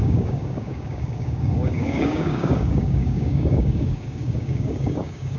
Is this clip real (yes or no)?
no